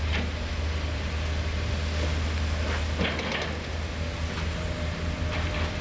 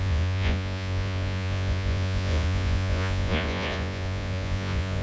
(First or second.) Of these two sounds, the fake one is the second